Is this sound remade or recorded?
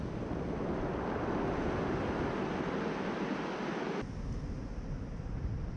recorded